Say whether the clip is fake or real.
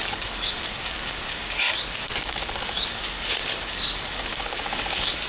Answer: fake